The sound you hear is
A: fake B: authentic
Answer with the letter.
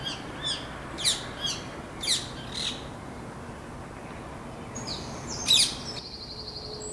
B